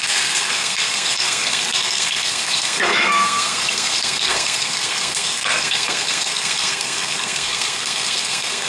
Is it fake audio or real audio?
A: fake